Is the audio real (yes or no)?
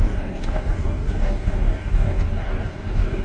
no